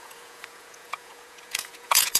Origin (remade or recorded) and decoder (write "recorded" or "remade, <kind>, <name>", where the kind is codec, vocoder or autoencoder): remade, vocoder, Vocos